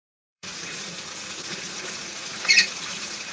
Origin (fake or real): fake